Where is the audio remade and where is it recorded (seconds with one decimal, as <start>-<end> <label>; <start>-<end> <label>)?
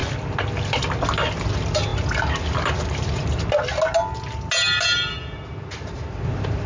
0.0-6.7 recorded